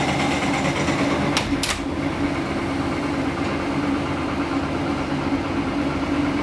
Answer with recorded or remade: recorded